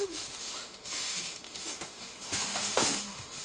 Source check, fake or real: fake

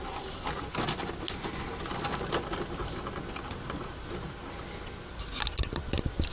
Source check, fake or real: real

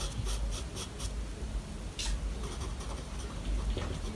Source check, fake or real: real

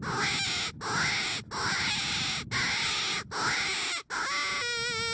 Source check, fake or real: real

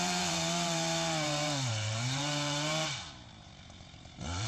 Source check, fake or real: fake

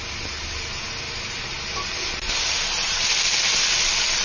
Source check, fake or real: real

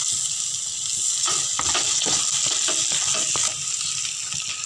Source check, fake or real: real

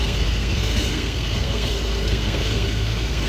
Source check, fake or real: fake